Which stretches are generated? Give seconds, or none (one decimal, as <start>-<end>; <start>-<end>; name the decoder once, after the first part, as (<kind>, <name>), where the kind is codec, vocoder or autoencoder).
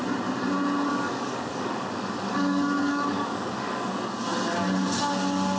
0.9-3.9 (codec, DAC)